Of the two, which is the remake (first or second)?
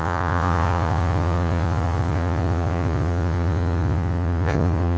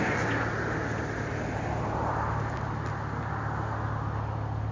first